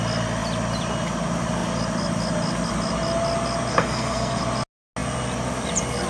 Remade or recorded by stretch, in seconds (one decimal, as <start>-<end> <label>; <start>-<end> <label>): 0.0-3.7 recorded; 3.7-4.4 remade; 4.4-6.1 recorded